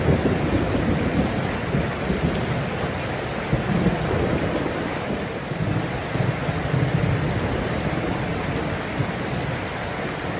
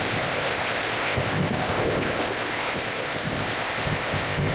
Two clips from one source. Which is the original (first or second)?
first